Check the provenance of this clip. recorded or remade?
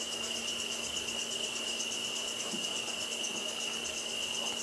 remade